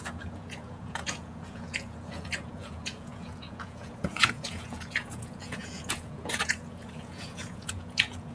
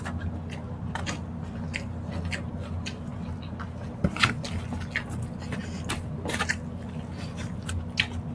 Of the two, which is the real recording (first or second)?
second